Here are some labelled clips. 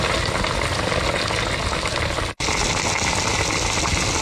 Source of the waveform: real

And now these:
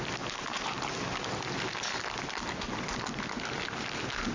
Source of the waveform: real